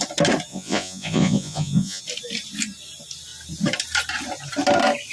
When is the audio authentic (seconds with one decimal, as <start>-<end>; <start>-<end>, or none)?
0.0-0.5; 2.0-5.1